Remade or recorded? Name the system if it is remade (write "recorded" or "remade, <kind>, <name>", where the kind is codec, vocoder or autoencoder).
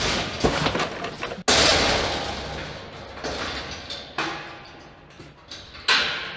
recorded